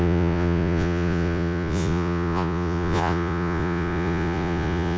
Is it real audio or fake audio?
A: fake